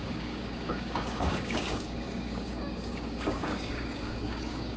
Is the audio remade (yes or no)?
yes